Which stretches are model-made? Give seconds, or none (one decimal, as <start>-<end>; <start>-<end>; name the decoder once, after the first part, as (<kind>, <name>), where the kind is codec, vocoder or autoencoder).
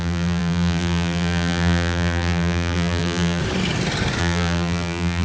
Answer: 0.0-3.4 (vocoder, BigVGAN v2); 4.2-5.2